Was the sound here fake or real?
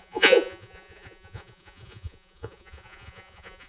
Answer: fake